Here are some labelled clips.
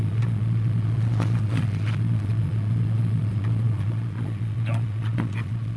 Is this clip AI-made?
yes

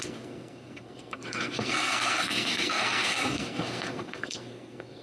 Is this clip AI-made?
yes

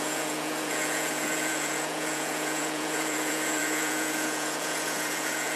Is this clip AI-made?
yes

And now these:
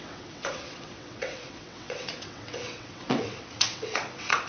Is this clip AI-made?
yes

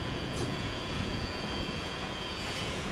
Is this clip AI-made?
yes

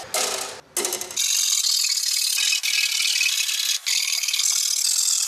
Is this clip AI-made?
no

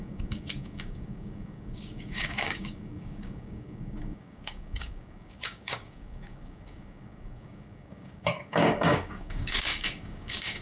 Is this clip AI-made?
yes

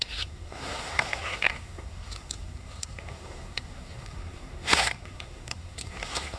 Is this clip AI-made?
yes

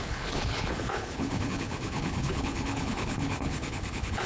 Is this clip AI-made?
yes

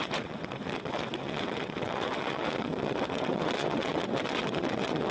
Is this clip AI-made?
yes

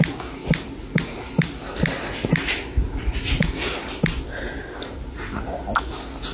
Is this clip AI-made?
no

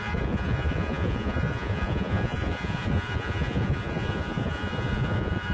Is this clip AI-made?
yes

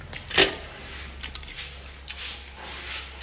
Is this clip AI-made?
no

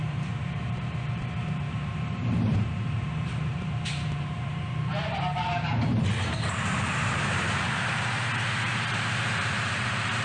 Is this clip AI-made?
yes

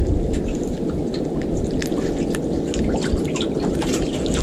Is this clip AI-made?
no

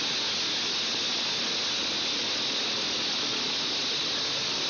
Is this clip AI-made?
no